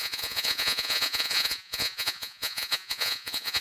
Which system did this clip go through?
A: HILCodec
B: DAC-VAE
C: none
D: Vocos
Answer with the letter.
D